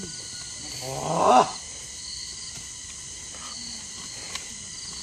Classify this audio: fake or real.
real